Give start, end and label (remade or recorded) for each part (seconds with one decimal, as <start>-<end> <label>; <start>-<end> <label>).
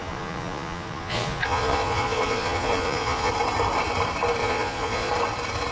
0.0-3.3 remade; 3.3-4.4 recorded; 4.4-5.1 remade; 5.1-5.7 recorded